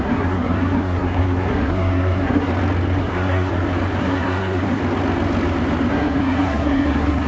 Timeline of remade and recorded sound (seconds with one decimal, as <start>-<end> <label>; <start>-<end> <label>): 0.0-2.5 remade; 2.5-3.0 recorded; 3.0-3.5 remade; 3.5-4.0 recorded; 4.0-4.8 remade; 4.8-5.9 recorded; 5.9-7.3 remade

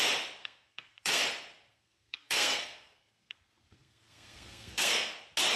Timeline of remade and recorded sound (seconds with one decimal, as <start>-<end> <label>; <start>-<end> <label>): 0.0-0.4 recorded; 0.4-1.2 remade; 1.2-1.7 recorded; 1.7-5.1 remade; 5.1-5.6 recorded